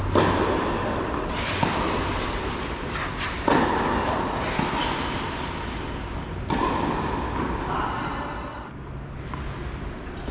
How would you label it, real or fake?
real